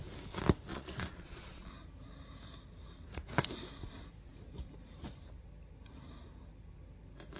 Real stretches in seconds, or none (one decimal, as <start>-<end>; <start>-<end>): 0.0-0.7; 1.7-7.4